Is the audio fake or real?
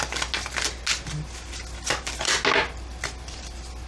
real